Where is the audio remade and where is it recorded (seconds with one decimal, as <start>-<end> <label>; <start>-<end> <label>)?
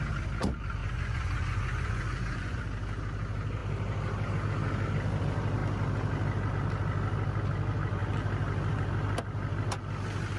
0.0-0.8 recorded; 0.8-2.6 remade; 2.6-10.4 recorded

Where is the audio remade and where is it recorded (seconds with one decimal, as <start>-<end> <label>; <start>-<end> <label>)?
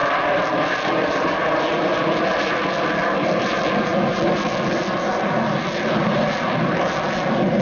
0.0-7.6 remade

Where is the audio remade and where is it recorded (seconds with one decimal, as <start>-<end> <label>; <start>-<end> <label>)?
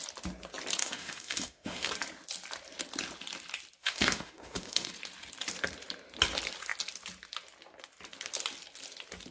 0.0-0.8 recorded; 0.8-1.9 remade; 1.9-3.8 recorded; 3.8-4.9 remade; 4.9-9.3 recorded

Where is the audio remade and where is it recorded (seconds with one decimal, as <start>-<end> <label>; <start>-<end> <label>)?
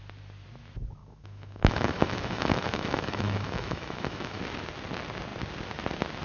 0.0-1.0 recorded; 1.0-4.4 remade; 4.4-6.2 recorded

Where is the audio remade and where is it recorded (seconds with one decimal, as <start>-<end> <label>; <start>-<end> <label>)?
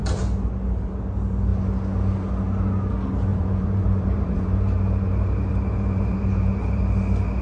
0.0-0.5 remade; 0.5-3.3 recorded; 3.3-6.8 remade; 6.8-7.4 recorded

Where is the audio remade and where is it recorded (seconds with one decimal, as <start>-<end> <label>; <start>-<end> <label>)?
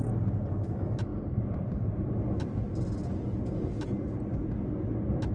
0.0-1.1 recorded; 1.1-2.0 remade; 2.0-5.3 recorded